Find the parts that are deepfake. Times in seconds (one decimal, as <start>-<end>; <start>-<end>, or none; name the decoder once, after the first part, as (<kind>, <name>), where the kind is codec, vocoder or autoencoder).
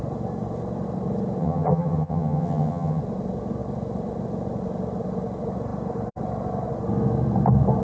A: 1.4-3.0 (vocoder, HiFi-GAN)